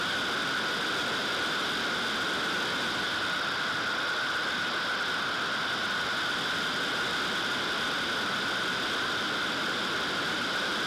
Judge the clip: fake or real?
real